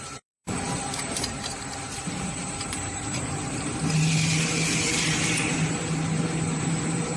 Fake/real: fake